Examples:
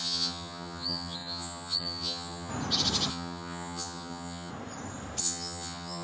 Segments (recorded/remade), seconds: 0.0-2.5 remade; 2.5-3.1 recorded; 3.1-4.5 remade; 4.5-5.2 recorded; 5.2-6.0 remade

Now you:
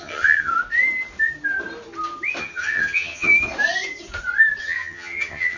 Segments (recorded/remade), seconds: 0.0-0.5 remade; 0.5-2.4 recorded; 2.4-3.3 remade; 3.3-4.6 recorded; 4.6-5.6 remade

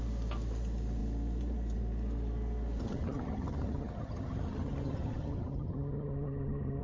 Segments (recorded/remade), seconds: 0.0-2.8 recorded; 2.8-6.8 remade

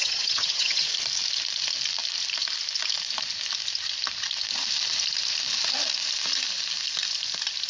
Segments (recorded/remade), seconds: 0.0-0.9 remade; 0.9-7.7 recorded

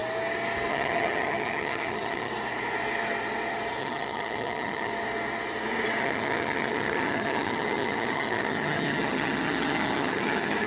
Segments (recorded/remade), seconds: 0.0-0.7 recorded; 0.7-2.3 remade; 2.3-3.8 recorded; 3.8-4.9 remade; 4.9-6.0 recorded; 6.0-10.7 remade

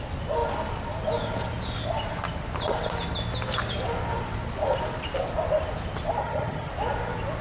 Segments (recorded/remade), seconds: 0.0-6.2 recorded; 6.2-6.7 remade; 6.7-7.4 recorded